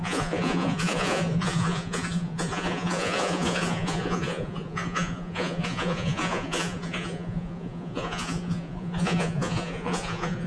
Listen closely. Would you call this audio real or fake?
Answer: fake